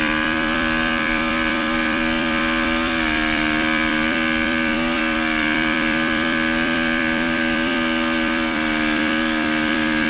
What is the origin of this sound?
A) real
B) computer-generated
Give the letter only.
B